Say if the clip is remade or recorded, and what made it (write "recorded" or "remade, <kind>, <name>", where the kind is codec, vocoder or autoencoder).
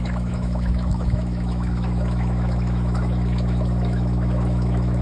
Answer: remade, autoencoder, DAC-VAE